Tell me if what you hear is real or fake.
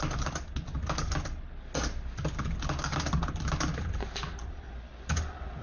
real